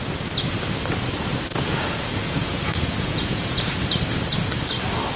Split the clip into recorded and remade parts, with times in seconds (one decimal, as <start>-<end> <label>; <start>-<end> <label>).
0.0-1.5 recorded; 1.5-3.9 remade; 3.9-5.2 recorded